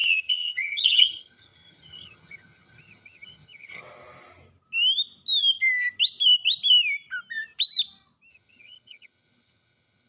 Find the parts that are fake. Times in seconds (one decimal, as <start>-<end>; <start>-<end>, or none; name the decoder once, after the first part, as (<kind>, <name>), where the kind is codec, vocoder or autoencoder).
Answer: 0.0-3.8 (vocoder, HiFi-GAN); 8.3-10.1